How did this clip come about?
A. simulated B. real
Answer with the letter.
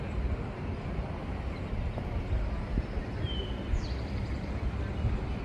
B